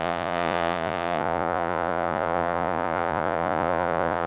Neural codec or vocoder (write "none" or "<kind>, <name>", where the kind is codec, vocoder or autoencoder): vocoder, Vocos